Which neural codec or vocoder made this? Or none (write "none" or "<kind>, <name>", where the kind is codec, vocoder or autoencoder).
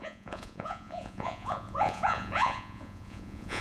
vocoder, Vocos